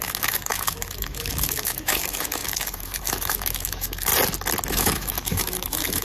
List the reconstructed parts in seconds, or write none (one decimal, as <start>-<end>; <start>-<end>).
0.0-4.1; 4.7-6.0